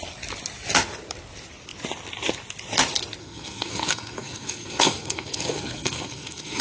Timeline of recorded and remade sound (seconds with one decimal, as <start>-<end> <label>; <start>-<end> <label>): 0.0-3.2 recorded; 3.2-6.6 remade